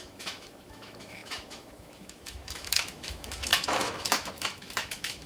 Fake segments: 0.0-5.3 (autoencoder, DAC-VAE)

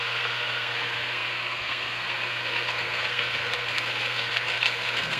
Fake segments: 0.0-5.2 (codec, SNAC)

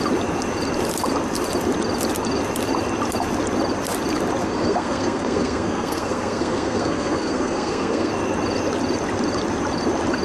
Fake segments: 4.4-8.1 (codec, SNAC)

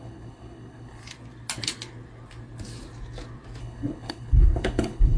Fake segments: 0.0-1.0 (codec, HILCodec); 3.6-5.2

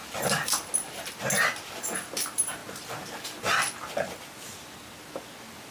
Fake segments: none